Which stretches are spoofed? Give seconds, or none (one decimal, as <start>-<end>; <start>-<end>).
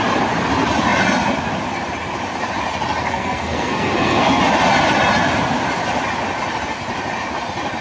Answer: 3.0-4.4